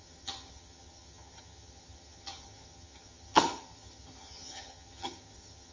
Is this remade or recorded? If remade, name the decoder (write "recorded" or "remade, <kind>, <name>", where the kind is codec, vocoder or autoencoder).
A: remade, vocoder, HiFi-GAN